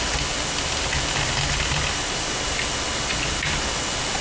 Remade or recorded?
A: recorded